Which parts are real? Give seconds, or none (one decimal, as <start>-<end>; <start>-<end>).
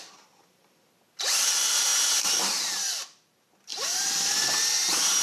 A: 0.0-3.7; 4.6-5.2